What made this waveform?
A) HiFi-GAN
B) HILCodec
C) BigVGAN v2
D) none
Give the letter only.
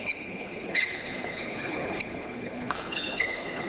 B